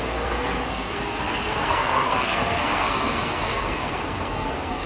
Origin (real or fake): fake